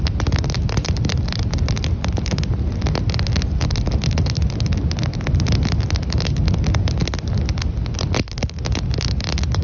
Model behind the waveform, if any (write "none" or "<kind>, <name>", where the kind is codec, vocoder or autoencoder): none